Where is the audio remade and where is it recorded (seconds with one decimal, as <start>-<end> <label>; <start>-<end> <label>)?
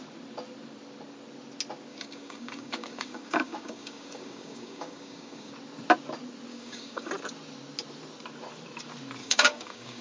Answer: 0.0-1.9 recorded; 1.9-5.5 remade; 5.5-6.5 recorded; 6.5-7.1 remade; 7.1-9.2 recorded; 9.2-10.0 remade